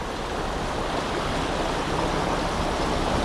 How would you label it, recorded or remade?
remade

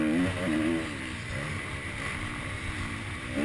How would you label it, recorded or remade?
recorded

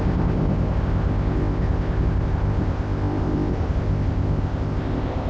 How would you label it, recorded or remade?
remade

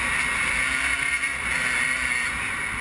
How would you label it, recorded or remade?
recorded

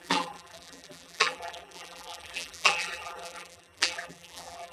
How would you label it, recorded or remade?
remade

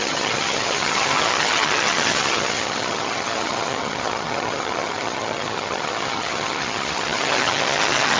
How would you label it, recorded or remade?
remade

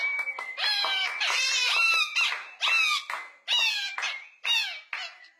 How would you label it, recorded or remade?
recorded